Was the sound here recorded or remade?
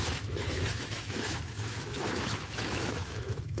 remade